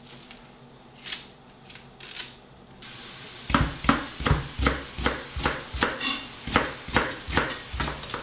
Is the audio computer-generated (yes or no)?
no